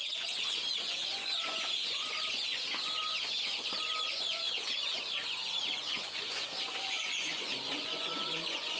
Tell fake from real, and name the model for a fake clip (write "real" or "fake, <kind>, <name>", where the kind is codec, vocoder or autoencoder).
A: fake, vocoder, Vocos